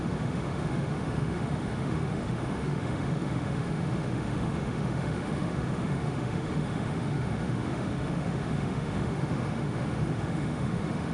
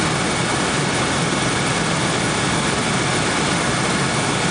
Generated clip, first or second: first